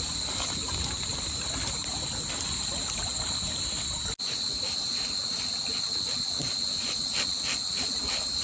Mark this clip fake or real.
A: real